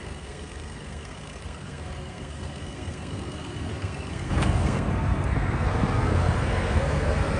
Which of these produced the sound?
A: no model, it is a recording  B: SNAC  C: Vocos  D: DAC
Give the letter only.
B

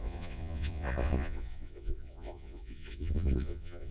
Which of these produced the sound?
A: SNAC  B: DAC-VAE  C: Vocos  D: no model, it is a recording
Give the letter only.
C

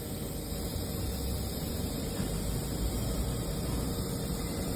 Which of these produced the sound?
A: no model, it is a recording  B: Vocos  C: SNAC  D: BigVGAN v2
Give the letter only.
A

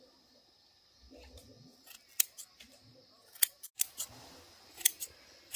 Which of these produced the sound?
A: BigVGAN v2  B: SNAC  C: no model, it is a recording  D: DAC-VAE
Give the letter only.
C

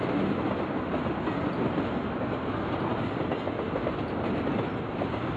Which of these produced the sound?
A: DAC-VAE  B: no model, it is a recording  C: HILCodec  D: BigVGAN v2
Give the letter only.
B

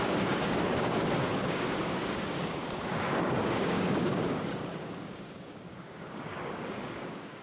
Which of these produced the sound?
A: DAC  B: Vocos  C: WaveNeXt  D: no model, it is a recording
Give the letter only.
A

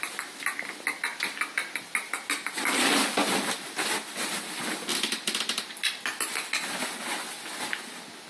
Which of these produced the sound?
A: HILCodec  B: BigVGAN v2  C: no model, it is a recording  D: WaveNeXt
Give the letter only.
C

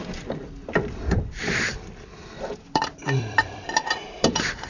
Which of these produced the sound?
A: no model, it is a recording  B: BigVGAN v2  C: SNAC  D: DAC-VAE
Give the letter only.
B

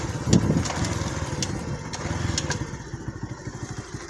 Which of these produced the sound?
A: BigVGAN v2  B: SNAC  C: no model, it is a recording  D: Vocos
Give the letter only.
C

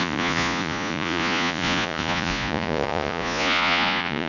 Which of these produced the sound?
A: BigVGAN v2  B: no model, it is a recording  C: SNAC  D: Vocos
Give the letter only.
D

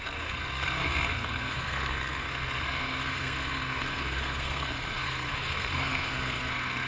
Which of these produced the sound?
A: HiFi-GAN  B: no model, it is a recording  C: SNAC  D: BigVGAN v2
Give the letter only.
C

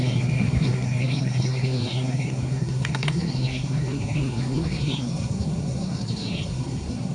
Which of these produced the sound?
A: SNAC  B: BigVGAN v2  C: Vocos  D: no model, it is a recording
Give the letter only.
A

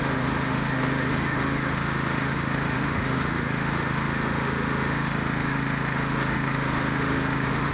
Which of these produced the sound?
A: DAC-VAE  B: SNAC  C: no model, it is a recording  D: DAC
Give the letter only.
A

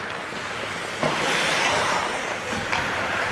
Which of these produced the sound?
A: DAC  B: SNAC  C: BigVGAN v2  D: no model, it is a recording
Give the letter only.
D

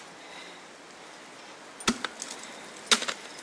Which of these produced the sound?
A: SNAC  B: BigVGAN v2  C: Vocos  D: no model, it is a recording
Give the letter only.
D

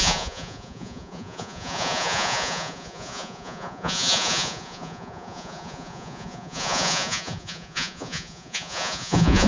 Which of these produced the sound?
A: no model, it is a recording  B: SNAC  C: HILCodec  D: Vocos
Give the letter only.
D